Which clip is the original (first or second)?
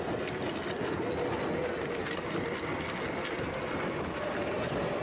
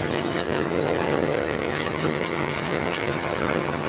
first